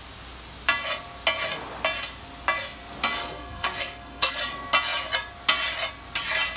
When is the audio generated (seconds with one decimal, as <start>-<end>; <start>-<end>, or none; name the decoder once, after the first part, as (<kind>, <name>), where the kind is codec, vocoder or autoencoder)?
3.2-4.4 (codec, SNAC)